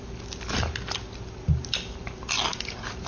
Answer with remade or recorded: recorded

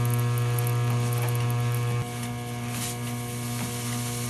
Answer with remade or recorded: recorded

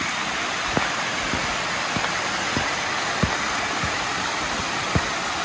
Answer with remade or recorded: recorded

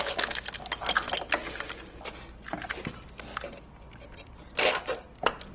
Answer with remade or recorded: recorded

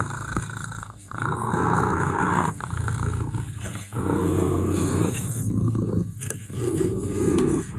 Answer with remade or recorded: remade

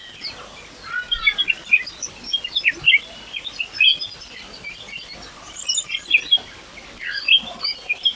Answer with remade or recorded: recorded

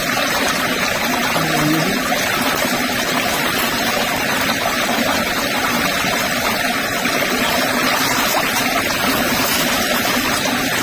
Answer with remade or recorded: recorded